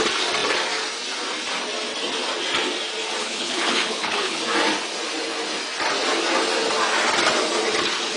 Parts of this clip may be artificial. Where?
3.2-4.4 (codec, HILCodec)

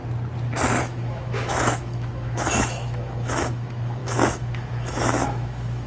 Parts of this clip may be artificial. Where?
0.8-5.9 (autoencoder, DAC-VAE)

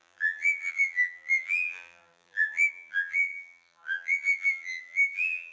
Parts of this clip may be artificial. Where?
0.0-5.5 (vocoder, BigVGAN v2)